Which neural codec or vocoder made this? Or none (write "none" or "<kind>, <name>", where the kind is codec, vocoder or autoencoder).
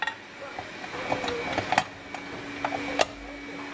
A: none